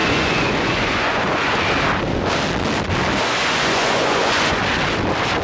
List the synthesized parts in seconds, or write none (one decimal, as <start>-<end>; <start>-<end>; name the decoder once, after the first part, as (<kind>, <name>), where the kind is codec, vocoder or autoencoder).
0.0-1.6 (vocoder, Vocos); 3.4-4.6